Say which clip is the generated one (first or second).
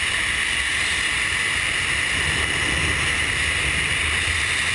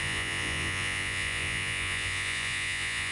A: second